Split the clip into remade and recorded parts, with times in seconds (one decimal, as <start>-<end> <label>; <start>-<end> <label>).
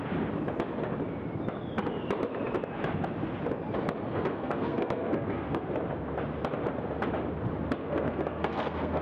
0.0-4.1 recorded; 4.1-5.7 remade; 5.7-7.8 recorded; 7.8-9.0 remade